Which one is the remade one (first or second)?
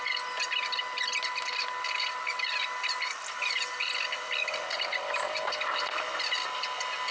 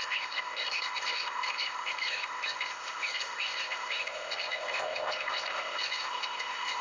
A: second